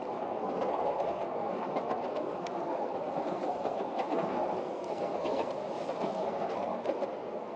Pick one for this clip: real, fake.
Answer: fake